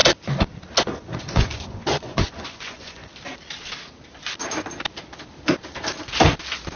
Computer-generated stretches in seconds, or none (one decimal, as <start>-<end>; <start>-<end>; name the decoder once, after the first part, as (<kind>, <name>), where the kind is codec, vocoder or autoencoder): 0.8-3.1 (vocoder, Vocos)